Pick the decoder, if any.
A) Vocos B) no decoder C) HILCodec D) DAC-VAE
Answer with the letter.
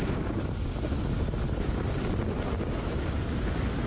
B